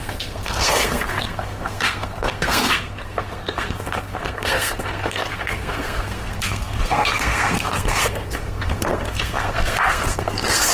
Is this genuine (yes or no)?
no